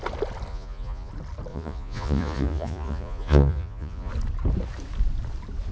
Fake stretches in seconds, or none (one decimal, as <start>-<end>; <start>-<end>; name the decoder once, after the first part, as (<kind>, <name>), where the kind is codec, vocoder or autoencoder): 0.5-1.1 (vocoder, Vocos); 1.5-4.1